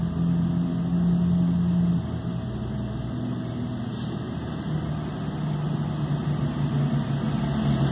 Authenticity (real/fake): real